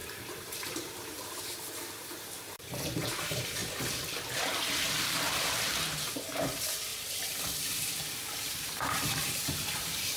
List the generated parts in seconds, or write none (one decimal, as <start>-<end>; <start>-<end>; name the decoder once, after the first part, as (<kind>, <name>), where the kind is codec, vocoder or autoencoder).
0.0-3.6 (vocoder, BigVGAN v2); 5.0-10.2